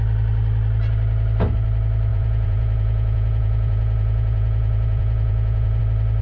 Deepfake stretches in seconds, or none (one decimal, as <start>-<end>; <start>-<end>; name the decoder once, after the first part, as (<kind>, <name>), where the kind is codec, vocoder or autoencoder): 2.1-5.8 (vocoder, Vocos)